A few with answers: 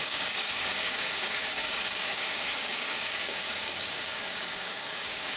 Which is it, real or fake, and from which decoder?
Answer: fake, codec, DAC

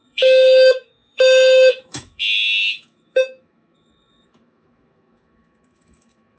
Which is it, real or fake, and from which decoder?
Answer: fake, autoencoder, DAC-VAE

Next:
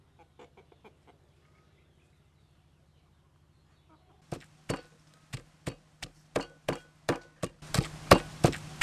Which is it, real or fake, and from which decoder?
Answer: real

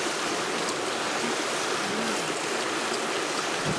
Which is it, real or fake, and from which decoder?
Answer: real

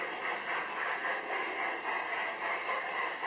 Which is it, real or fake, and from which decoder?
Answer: real